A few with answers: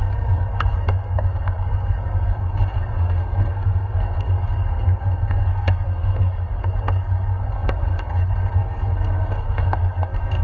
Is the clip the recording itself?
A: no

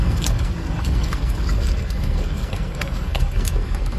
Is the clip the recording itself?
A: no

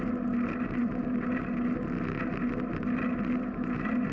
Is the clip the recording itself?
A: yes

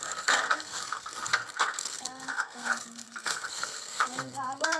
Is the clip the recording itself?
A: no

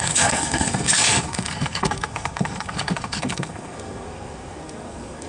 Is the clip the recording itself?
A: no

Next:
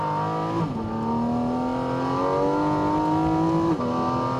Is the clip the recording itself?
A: yes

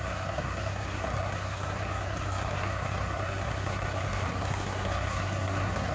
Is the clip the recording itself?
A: no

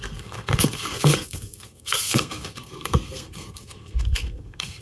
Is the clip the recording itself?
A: no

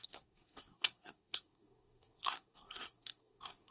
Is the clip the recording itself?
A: no